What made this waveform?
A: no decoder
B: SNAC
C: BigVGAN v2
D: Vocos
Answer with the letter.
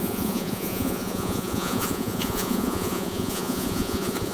D